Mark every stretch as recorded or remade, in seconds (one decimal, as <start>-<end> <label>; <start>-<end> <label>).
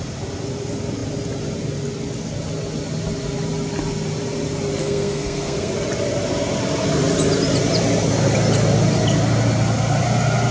0.0-4.8 recorded; 4.8-5.7 remade; 5.7-10.5 recorded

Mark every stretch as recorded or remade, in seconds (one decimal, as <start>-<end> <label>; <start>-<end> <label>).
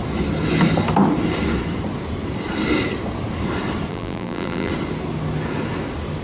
0.0-3.9 recorded; 3.9-4.7 remade; 4.7-6.2 recorded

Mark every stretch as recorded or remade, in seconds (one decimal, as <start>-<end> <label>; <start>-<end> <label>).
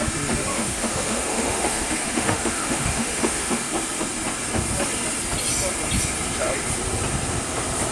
0.0-0.5 recorded; 0.5-3.6 remade; 3.6-7.9 recorded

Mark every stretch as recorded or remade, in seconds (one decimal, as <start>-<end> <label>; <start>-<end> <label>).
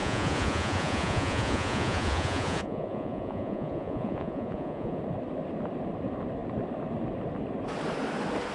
0.0-5.0 remade; 5.0-8.5 recorded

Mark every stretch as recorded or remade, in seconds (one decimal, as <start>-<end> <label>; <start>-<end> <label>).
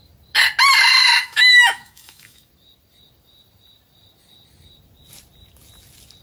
0.0-1.0 recorded; 1.0-2.5 remade; 2.5-6.2 recorded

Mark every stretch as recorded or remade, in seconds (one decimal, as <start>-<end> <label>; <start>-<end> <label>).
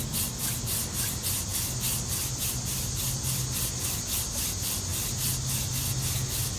0.0-6.6 recorded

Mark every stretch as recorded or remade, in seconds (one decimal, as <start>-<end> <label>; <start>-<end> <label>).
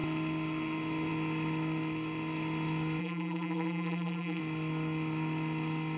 0.0-3.0 recorded; 3.0-4.4 remade; 4.4-6.0 recorded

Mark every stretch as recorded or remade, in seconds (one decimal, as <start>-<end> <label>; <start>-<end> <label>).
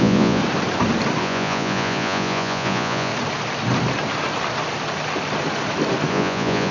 0.0-0.4 remade; 0.4-1.2 recorded; 1.2-3.1 remade; 3.1-6.1 recorded; 6.1-6.7 remade